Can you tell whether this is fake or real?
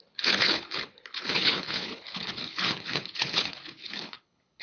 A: fake